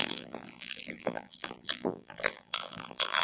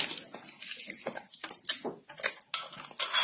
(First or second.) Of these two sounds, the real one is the second